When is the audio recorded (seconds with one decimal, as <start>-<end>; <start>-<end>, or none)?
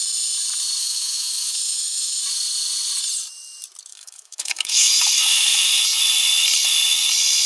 0.0-0.8; 2.2-3.9; 5.8-7.5